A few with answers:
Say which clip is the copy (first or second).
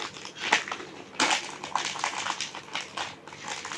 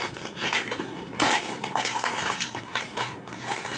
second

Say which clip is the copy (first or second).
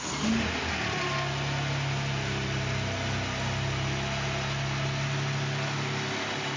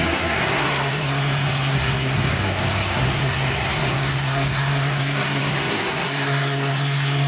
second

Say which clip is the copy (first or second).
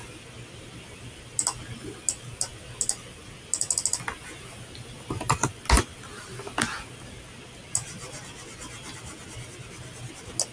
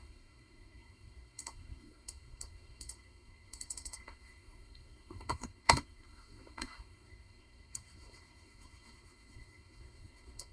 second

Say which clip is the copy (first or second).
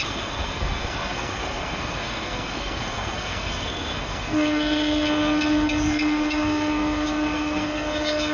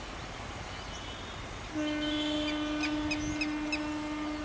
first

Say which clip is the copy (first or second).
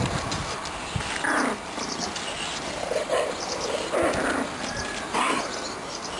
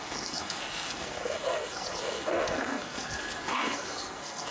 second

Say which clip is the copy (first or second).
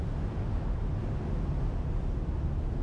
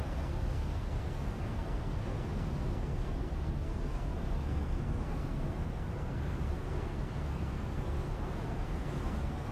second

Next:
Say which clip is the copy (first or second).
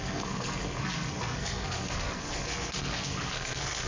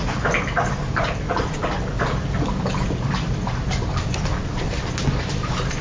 first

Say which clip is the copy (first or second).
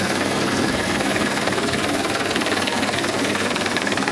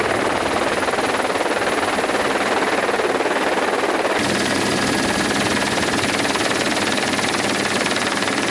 first